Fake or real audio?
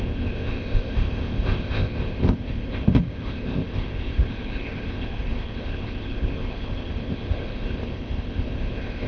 fake